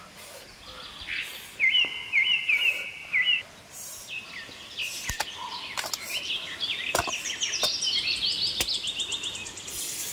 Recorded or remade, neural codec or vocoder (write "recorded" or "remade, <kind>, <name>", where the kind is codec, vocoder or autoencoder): recorded